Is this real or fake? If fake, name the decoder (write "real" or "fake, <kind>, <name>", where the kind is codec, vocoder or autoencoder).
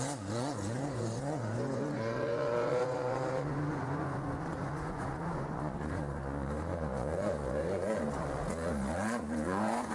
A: fake, vocoder, Vocos